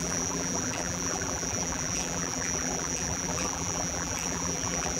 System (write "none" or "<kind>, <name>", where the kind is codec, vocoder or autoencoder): vocoder, BigVGAN v2